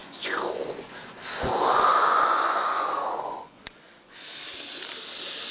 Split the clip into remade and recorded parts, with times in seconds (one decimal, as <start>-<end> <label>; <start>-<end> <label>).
0.0-4.3 remade; 4.3-5.5 recorded